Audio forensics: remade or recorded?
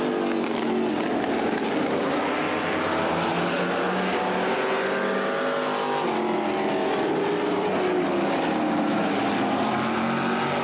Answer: recorded